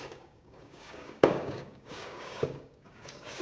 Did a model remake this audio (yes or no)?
yes